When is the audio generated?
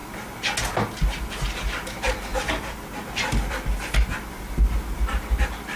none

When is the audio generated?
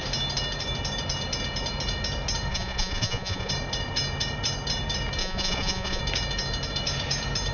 2.5-3.5 (vocoder, Vocos); 5.2-6.0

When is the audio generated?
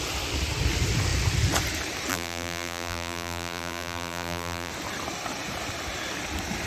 2.1-4.7 (vocoder, BigVGAN v2)